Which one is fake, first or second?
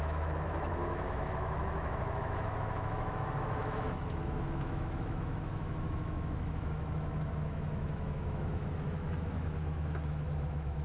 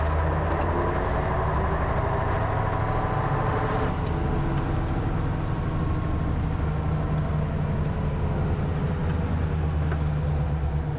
first